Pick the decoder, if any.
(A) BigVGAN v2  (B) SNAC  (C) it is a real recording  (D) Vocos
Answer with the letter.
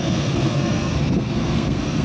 B